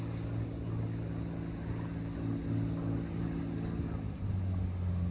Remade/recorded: recorded